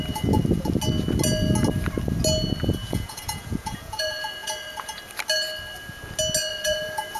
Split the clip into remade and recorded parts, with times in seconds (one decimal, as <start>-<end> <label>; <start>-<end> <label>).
0.0-2.8 recorded; 2.8-5.0 remade; 5.0-6.5 recorded; 6.5-7.2 remade